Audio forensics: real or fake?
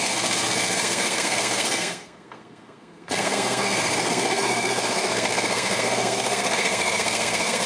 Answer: fake